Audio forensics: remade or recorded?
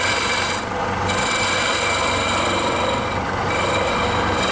recorded